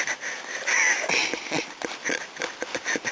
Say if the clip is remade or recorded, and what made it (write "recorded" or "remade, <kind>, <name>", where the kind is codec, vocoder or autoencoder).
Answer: remade, vocoder, BigVGAN v2